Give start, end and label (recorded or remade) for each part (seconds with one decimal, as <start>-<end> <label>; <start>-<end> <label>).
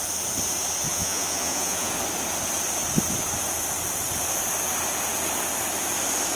0.0-0.9 recorded; 0.9-1.9 remade; 1.9-6.4 recorded